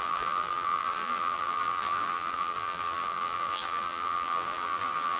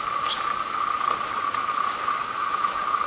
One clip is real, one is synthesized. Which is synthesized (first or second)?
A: first